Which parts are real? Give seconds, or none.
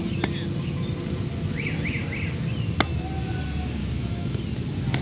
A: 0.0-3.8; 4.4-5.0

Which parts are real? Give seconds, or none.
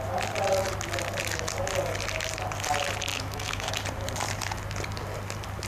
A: 0.0-3.1; 3.7-5.7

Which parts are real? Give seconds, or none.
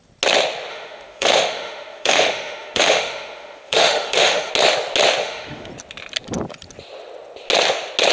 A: 0.0-0.7; 4.5-5.2; 5.7-8.1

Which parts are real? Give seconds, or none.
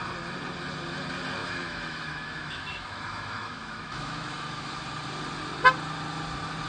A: 0.0-1.4; 4.7-6.7